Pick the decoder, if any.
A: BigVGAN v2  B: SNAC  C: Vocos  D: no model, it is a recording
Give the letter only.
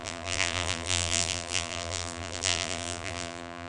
A